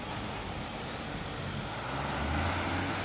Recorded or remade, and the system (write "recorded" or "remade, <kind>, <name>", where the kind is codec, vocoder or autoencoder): recorded